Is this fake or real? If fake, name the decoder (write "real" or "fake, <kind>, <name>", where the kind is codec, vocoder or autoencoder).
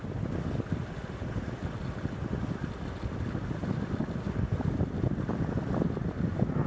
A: real